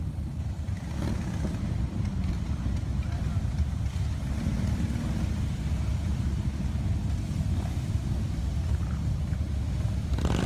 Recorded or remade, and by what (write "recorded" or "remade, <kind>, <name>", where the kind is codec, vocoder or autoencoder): recorded